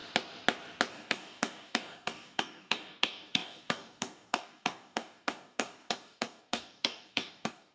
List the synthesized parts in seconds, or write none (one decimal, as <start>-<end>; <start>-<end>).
0.9-7.7